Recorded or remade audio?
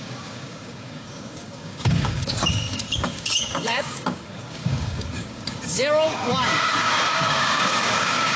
remade